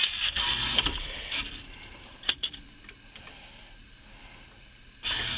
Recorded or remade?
recorded